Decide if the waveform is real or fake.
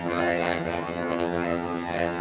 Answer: fake